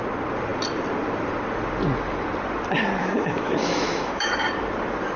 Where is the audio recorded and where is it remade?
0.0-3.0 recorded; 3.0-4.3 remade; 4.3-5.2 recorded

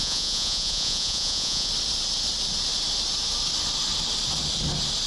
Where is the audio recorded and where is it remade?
0.0-1.7 remade; 1.7-5.1 recorded